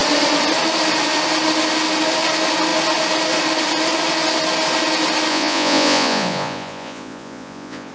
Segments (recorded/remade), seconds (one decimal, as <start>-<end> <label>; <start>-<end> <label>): 0.0-5.3 recorded; 5.3-7.9 remade